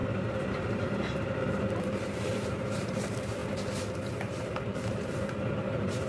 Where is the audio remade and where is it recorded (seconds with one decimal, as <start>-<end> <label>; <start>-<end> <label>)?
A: 0.0-3.4 remade; 3.4-4.1 recorded; 4.1-6.1 remade